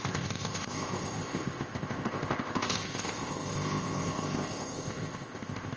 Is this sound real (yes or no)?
no